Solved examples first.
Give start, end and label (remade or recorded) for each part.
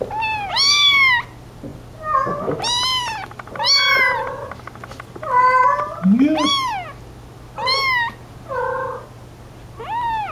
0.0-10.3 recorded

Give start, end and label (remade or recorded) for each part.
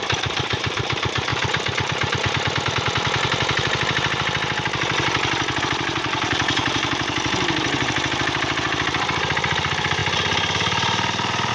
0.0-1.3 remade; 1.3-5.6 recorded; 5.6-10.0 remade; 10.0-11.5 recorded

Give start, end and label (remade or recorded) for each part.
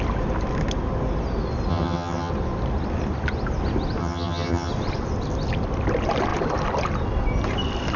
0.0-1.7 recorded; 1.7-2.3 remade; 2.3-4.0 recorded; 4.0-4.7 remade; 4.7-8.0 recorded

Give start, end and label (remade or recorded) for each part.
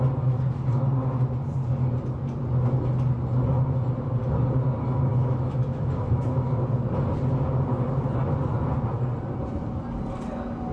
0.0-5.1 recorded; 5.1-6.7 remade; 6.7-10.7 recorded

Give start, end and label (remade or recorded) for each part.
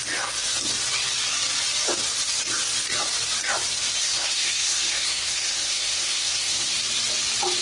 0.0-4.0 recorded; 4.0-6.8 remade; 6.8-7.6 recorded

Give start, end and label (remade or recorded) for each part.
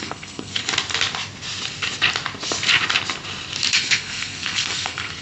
0.0-0.6 remade; 0.6-3.7 recorded; 3.7-5.2 remade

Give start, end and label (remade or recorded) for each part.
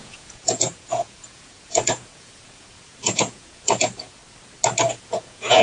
0.0-4.2 remade; 4.2-4.9 recorded; 4.9-5.6 remade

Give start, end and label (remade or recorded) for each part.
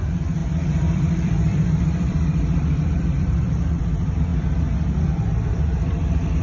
0.0-4.3 remade; 4.3-4.9 recorded; 4.9-6.4 remade